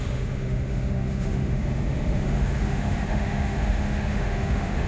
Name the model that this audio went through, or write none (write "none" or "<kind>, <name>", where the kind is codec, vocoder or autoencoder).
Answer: autoencoder, DAC-VAE